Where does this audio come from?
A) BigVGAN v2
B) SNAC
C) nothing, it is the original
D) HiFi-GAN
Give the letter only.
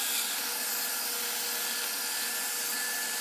C